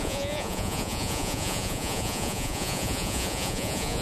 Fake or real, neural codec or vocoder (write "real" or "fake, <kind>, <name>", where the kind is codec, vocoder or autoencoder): fake, vocoder, Vocos